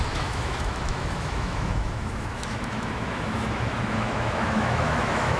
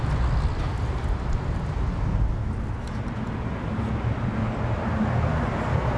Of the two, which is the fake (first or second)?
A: first